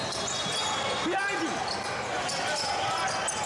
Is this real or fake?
real